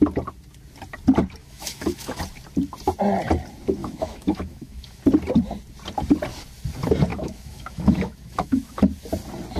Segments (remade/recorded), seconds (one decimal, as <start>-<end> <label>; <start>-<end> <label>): 0.0-1.4 recorded; 1.4-2.2 remade; 2.2-3.8 recorded; 3.8-5.0 remade; 5.0-7.1 recorded; 7.1-8.8 remade; 8.8-9.6 recorded